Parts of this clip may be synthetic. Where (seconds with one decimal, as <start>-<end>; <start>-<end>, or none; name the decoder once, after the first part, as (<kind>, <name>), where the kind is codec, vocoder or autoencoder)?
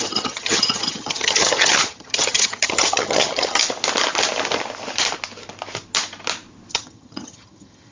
0.0-3.6 (vocoder, HiFi-GAN); 6.7-7.9